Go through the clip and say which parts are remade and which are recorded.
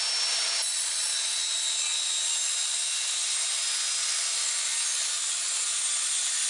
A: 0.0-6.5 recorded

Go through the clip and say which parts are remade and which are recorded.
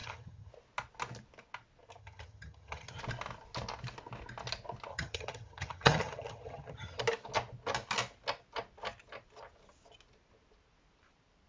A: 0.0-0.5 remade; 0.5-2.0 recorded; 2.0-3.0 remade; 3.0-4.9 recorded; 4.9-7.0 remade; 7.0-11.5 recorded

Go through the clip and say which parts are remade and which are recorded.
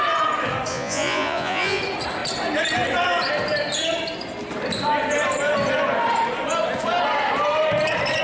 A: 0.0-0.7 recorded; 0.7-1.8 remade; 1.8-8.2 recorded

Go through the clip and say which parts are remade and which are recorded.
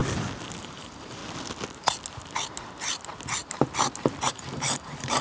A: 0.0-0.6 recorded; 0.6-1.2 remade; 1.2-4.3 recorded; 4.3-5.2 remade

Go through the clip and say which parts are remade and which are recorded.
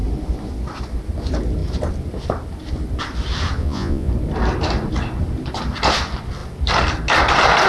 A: 0.0-3.6 recorded; 3.6-4.1 remade; 4.1-7.7 recorded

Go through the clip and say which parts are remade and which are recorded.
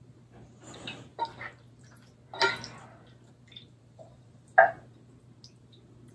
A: 0.0-6.1 recorded